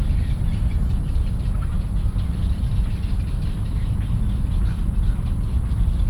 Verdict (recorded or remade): recorded